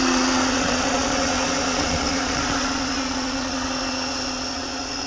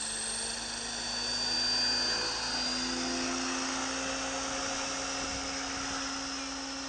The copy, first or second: first